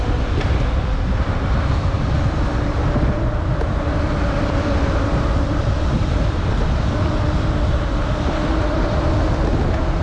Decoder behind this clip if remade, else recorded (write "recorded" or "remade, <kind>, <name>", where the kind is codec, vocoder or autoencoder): remade, vocoder, BigVGAN v2